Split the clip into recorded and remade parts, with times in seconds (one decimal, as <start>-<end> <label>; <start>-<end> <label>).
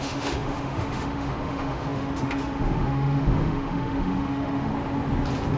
0.0-4.7 remade; 4.7-5.6 recorded